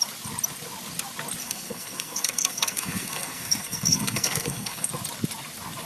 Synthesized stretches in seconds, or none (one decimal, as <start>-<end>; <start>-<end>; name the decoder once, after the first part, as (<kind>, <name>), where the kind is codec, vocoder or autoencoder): 1.4-4.9 (codec, SNAC)